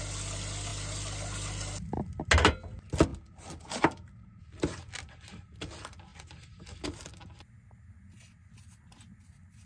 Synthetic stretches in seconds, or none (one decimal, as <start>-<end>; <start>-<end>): none